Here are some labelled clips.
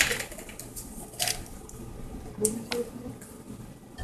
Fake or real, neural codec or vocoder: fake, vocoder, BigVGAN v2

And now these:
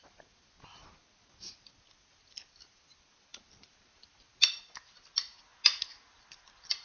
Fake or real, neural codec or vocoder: real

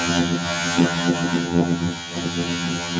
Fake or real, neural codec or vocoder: fake, vocoder, HiFi-GAN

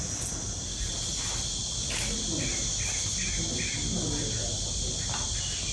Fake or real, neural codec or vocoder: real